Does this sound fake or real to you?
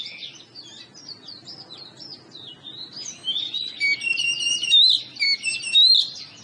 real